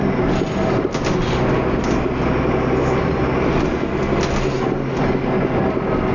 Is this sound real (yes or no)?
yes